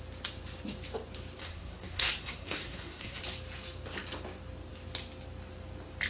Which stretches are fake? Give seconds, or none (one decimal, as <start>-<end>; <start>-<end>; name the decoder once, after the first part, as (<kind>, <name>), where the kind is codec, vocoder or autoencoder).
1.4-3.2 (codec, SNAC)